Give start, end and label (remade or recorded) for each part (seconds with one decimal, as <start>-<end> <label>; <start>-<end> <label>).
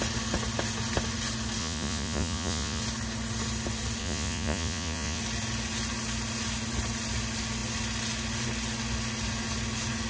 0.0-1.6 recorded; 1.6-2.8 remade; 2.8-4.0 recorded; 4.0-5.2 remade; 5.2-10.1 recorded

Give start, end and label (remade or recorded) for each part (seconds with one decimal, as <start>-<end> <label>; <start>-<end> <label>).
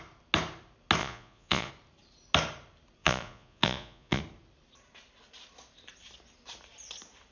0.0-1.0 recorded; 1.0-1.7 remade; 1.7-3.0 recorded; 3.0-4.2 remade; 4.2-7.3 recorded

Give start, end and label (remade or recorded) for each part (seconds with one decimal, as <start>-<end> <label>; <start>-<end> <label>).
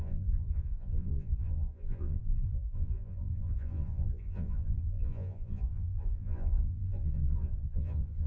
0.0-8.3 remade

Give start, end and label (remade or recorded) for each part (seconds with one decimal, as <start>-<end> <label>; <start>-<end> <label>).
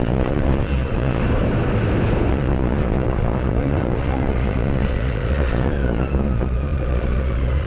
0.0-1.2 remade; 1.2-2.3 recorded; 2.3-7.7 remade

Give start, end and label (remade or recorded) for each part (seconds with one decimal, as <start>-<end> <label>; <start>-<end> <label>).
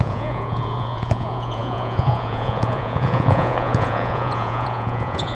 0.0-5.3 remade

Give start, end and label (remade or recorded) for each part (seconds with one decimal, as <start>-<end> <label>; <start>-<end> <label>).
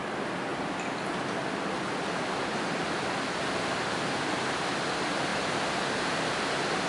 0.0-6.9 recorded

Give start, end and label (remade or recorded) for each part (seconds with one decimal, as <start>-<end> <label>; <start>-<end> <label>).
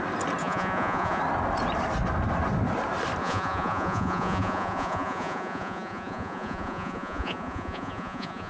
0.0-0.4 recorded; 0.4-1.2 remade; 1.2-3.2 recorded; 3.2-8.5 remade